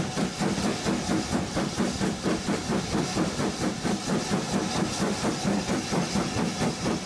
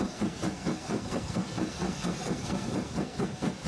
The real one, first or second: first